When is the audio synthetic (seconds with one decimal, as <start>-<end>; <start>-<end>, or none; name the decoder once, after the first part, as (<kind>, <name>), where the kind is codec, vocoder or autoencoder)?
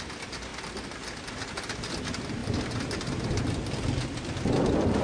none